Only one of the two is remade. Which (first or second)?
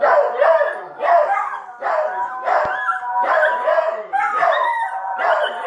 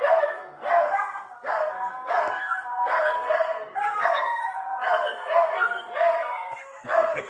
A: second